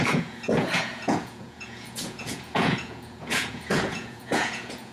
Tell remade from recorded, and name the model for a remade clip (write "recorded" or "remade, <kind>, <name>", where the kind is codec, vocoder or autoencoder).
remade, vocoder, Vocos